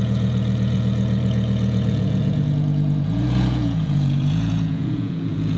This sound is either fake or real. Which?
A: fake